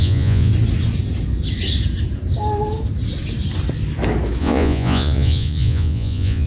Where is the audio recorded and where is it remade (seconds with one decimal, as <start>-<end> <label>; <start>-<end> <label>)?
0.0-0.5 remade; 0.5-4.4 recorded; 4.4-6.5 remade